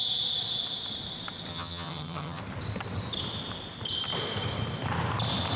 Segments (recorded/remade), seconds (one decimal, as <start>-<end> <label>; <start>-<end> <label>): 0.0-1.5 recorded; 1.5-2.4 remade; 2.4-5.6 recorded